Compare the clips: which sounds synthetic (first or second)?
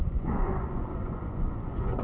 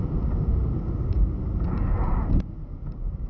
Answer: first